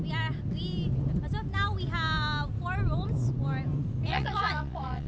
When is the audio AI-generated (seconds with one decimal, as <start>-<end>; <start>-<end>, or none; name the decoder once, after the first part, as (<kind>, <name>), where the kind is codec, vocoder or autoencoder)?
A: 4.1-5.1 (vocoder, Vocos)